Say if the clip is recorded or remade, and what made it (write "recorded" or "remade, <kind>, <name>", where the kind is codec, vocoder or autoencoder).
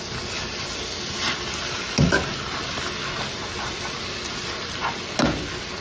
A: recorded